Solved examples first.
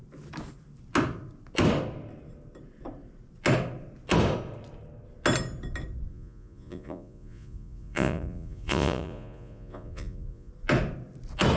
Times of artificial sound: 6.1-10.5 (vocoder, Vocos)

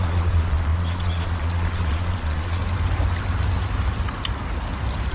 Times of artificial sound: 0.0-2.6 (vocoder, Vocos)

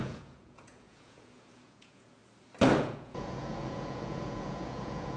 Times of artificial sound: 0.0-2.2 (vocoder, Vocos); 2.8-5.2

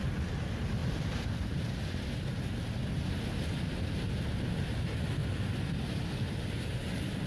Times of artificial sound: none

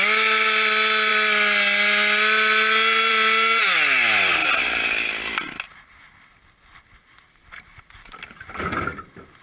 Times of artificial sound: none